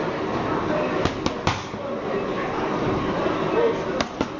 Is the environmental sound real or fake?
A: real